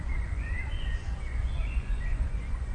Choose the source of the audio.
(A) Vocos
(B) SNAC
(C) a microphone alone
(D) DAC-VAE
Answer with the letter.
A